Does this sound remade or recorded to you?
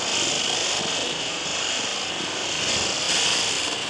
recorded